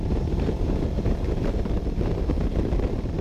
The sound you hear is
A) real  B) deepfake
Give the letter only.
B